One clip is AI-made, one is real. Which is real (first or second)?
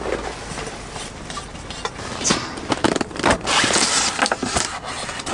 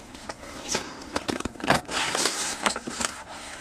first